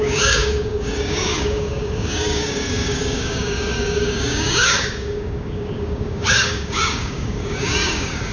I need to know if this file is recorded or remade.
remade